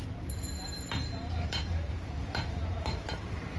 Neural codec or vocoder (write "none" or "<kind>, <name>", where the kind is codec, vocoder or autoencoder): vocoder, BigVGAN v2